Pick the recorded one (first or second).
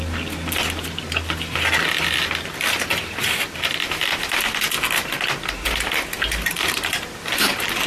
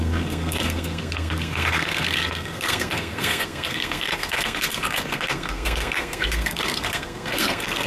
first